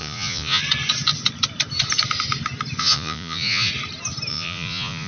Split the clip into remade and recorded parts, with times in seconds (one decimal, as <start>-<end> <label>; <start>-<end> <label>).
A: 0.0-0.6 remade; 0.6-2.8 recorded; 2.8-3.7 remade; 3.7-4.3 recorded; 4.3-5.1 remade

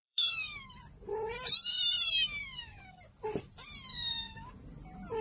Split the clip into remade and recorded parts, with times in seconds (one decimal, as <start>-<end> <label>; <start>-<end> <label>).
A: 0.0-0.8 remade; 0.8-2.4 recorded; 2.4-3.0 remade; 3.0-3.9 recorded; 3.9-4.5 remade; 4.5-5.2 recorded

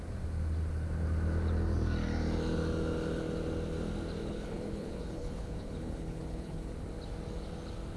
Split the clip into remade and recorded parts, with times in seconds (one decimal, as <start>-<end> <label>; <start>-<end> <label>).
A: 0.0-4.2 recorded; 4.2-6.7 remade; 6.7-8.0 recorded

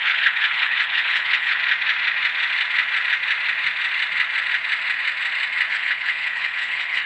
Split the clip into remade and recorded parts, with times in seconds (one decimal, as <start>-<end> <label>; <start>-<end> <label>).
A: 0.0-1.6 remade; 1.6-5.7 recorded; 5.7-7.1 remade

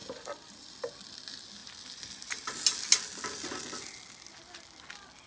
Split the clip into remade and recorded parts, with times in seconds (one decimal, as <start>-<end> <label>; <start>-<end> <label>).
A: 0.0-0.9 remade; 0.9-5.3 recorded

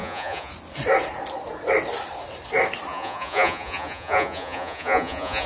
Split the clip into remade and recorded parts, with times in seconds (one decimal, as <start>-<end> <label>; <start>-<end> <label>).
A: 0.0-0.5 remade; 0.5-2.9 recorded; 2.9-5.5 remade

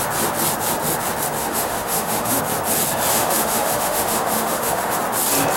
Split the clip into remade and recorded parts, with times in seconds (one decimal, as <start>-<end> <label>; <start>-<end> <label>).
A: 0.0-1.4 recorded; 1.4-2.4 remade; 2.4-3.1 recorded; 3.1-5.0 remade; 5.0-5.6 recorded